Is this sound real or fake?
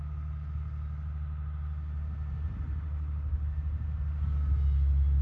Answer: real